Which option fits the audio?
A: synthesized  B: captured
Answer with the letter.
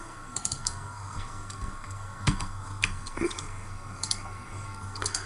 A